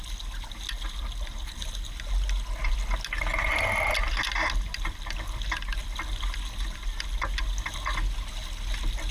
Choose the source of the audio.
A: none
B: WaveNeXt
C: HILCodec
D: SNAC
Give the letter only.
A